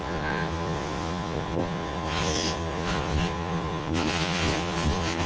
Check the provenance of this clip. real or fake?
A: fake